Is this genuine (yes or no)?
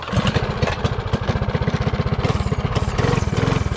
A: yes